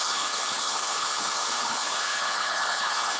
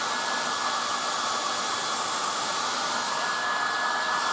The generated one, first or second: first